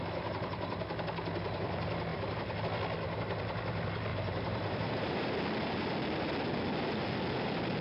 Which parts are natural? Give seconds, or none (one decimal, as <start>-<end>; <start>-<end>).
0.0-4.1; 5.4-7.8